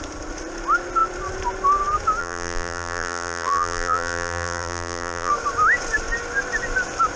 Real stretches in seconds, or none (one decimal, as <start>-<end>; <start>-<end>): 0.0-2.2; 5.3-7.2